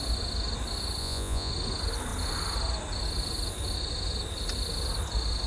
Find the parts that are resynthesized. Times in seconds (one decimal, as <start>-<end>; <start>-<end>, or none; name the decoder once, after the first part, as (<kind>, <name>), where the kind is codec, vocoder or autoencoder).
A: 1.0-1.5 (vocoder, Vocos)